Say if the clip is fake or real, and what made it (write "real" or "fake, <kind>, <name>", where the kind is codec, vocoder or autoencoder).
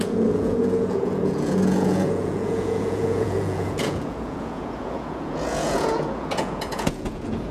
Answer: fake, vocoder, Vocos